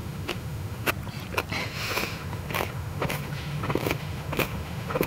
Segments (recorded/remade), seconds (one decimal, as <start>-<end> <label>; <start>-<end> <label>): 0.0-0.9 remade; 0.9-1.6 recorded; 1.6-5.1 remade